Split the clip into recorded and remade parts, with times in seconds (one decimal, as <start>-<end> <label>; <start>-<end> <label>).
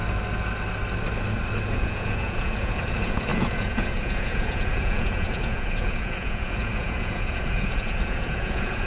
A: 0.0-1.6 recorded; 1.6-8.9 remade